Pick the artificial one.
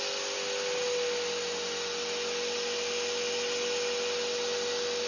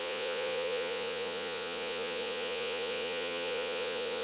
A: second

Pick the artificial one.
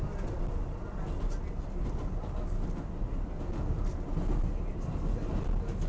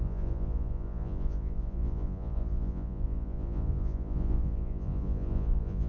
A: second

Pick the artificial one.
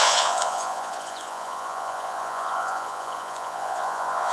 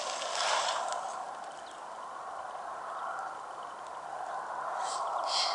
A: first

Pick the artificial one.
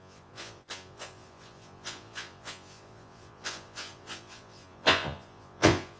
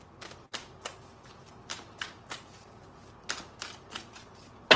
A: first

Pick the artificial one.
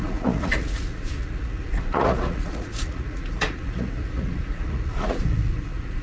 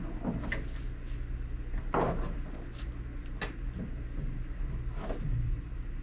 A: first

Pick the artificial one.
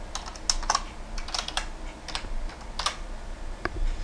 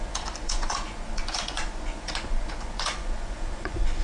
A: second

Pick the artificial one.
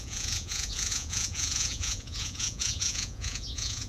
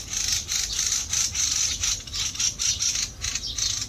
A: first